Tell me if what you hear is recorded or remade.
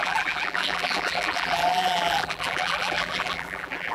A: remade